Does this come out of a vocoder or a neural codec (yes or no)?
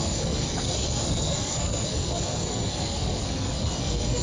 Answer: yes